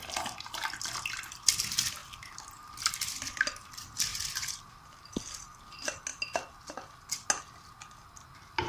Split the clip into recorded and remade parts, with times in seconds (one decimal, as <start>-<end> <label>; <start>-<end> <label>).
0.0-8.7 recorded